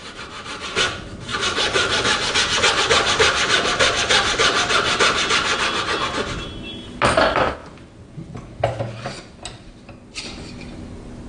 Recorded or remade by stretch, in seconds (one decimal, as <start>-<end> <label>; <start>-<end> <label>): 0.0-11.3 recorded